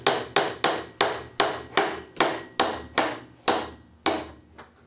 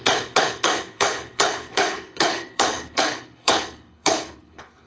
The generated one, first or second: second